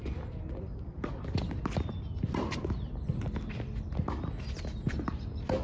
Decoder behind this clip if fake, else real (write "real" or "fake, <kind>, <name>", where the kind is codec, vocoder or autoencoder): real